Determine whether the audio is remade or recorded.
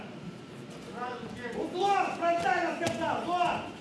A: recorded